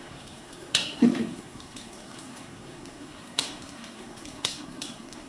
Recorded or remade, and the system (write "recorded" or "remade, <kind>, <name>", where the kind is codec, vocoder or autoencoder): remade, codec, SNAC